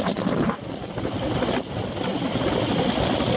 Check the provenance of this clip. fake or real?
real